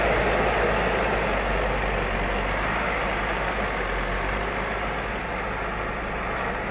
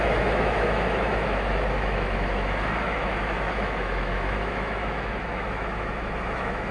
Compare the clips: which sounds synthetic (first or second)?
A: second